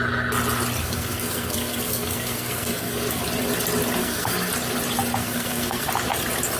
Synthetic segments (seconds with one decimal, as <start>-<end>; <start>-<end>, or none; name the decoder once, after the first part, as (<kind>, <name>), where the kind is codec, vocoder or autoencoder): 0.8-3.2 (codec, SNAC); 4.0-4.5; 5.2-5.9